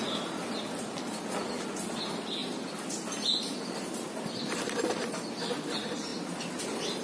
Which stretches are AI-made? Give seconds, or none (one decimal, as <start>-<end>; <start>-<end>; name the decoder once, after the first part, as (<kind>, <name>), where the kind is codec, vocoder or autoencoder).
none